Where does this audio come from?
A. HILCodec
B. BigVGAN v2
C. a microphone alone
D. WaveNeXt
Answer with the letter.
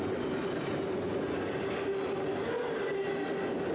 C